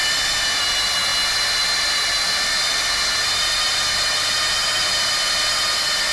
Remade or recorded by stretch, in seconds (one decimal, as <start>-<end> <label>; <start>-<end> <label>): 0.0-6.1 recorded